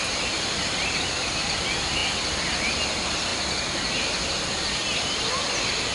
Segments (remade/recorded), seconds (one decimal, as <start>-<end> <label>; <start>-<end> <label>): 0.0-5.9 recorded